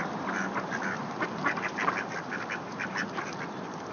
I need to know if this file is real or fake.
real